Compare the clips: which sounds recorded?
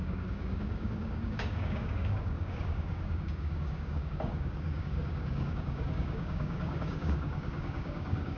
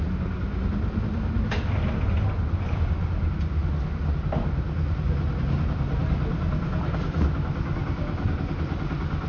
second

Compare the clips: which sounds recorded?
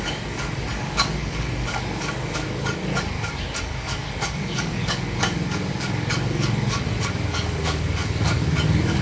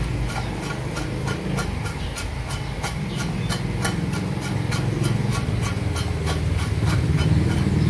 second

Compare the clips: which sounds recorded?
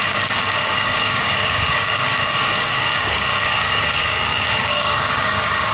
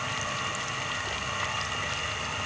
second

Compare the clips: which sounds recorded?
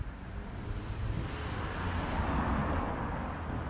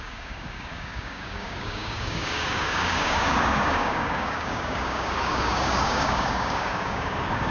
first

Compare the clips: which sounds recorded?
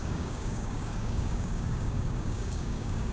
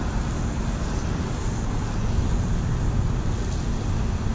second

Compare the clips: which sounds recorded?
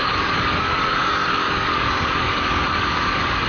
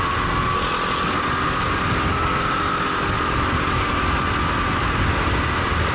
second